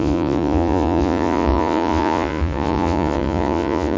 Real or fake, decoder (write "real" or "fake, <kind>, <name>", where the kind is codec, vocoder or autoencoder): fake, vocoder, Vocos